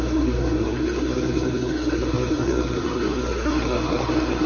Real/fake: fake